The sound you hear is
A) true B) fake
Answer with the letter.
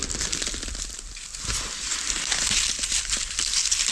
A